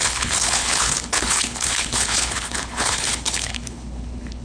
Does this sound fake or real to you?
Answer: fake